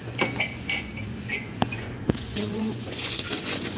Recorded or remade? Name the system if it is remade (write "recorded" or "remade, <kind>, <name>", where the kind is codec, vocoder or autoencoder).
remade, vocoder, Vocos